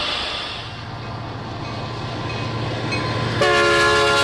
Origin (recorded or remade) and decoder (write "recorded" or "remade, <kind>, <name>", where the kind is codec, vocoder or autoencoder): recorded